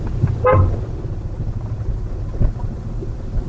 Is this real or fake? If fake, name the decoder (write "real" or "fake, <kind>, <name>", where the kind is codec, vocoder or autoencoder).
real